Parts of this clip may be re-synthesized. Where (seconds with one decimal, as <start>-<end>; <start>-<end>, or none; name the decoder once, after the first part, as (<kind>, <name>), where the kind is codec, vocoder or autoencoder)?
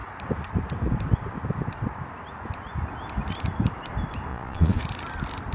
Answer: 4.3-4.8 (vocoder, Vocos)